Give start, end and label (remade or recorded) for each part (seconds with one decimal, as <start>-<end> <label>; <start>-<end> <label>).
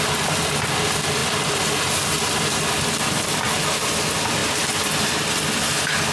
0.0-6.1 recorded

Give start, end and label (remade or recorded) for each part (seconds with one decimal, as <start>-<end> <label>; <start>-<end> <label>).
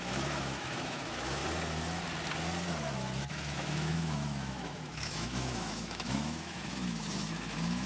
0.0-1.4 remade; 1.4-3.2 recorded; 3.2-7.9 remade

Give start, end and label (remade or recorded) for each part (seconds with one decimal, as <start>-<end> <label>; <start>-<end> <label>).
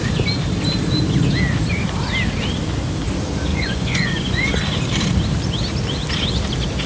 0.0-3.5 recorded; 3.5-4.5 remade; 4.5-6.9 recorded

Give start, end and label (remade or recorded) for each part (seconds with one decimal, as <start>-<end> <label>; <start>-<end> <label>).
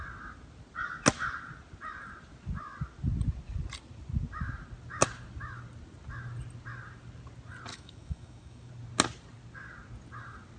0.0-7.7 recorded; 7.7-8.7 remade; 8.7-10.6 recorded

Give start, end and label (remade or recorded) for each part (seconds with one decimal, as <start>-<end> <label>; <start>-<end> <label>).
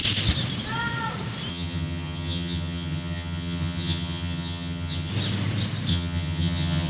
0.0-1.5 recorded; 1.5-5.1 remade; 5.1-5.9 recorded; 5.9-6.9 remade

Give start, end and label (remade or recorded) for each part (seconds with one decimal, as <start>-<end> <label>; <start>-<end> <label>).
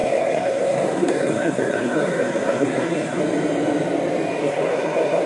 0.0-3.2 remade; 3.2-4.4 recorded; 4.4-5.3 remade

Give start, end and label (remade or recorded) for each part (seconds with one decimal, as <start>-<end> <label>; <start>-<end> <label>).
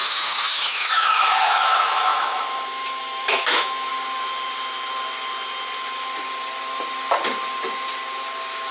0.0-3.9 remade; 3.9-8.7 recorded